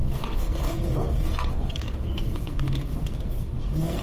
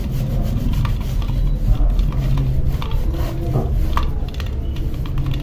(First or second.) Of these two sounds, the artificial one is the first